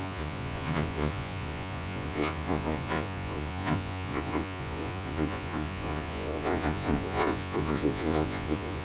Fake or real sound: fake